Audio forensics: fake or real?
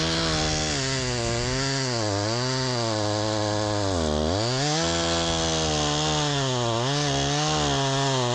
real